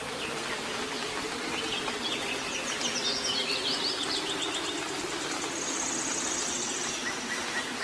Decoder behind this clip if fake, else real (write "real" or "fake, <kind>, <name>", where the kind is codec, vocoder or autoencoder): real